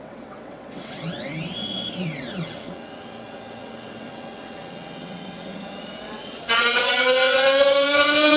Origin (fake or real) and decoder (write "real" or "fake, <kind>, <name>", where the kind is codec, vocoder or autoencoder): fake, vocoder, WaveNeXt